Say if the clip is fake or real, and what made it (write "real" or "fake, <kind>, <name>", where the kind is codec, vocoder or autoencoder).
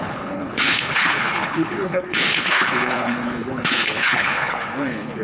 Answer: fake, codec, HILCodec